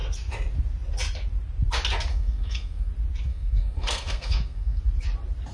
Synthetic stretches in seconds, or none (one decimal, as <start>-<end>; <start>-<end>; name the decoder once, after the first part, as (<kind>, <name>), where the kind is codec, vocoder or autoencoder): 2.1-2.9 (codec, SNAC); 3.3-4.8